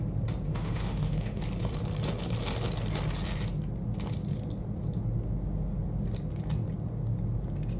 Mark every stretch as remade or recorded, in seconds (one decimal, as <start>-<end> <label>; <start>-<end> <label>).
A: 0.0-0.5 recorded; 0.5-1.4 remade; 1.4-7.8 recorded